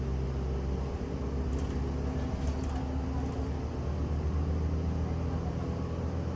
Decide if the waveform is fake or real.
real